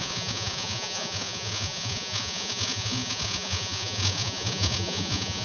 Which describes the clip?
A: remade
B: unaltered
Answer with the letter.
A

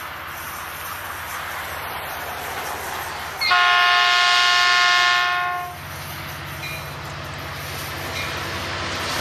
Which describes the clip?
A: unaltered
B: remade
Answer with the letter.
A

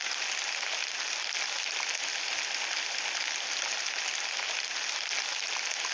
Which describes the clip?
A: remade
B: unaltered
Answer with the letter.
B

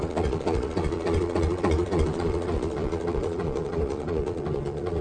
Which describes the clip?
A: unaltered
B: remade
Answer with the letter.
B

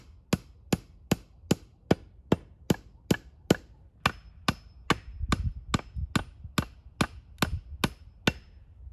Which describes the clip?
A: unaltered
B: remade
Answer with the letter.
A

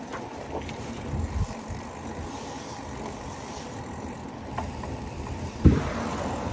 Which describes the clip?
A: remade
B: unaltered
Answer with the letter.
B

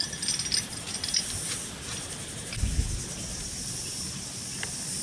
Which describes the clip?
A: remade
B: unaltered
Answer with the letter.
B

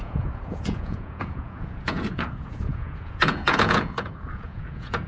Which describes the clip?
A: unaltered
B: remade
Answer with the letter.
B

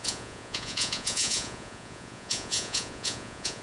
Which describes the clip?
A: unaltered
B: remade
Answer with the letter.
B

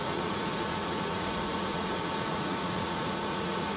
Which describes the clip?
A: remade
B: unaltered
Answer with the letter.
A